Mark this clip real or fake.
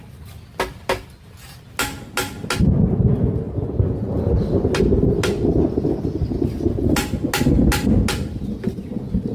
real